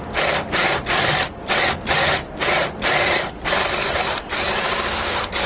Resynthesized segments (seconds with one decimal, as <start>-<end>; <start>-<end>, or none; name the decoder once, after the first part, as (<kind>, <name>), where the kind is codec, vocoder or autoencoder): none